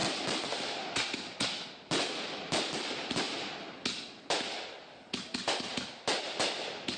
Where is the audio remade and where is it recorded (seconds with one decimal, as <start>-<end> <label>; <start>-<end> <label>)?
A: 0.0-7.0 recorded